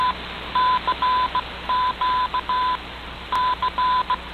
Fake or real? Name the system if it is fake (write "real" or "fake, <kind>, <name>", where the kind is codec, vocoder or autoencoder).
real